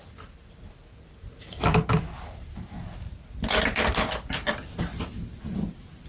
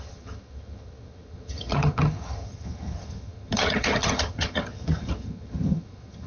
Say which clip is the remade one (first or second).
second